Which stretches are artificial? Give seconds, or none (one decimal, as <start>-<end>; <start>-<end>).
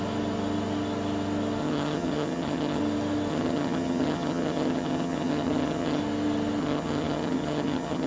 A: 1.6-2.8; 3.3-6.0; 6.6-8.1